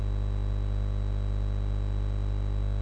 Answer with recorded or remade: recorded